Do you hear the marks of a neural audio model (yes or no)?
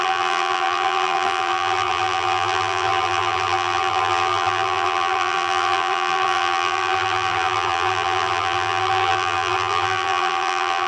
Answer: yes